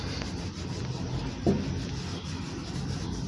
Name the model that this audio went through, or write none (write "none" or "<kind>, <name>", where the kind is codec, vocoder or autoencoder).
none